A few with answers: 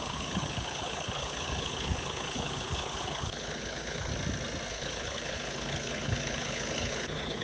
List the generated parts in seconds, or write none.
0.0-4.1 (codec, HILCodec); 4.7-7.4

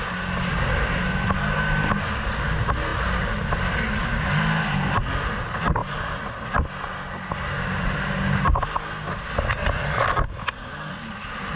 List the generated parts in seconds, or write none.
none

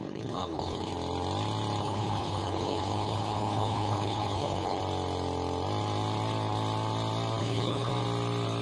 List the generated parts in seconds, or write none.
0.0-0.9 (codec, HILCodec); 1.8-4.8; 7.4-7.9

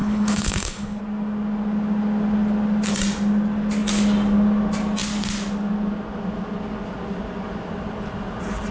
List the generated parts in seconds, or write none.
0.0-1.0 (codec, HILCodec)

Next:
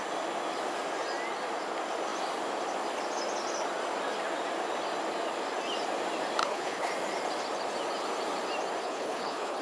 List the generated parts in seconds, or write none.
6.4-6.9 (codec, HILCodec); 8.8-9.6